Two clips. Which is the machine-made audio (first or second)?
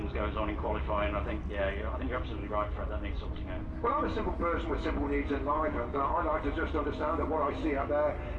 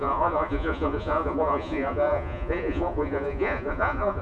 second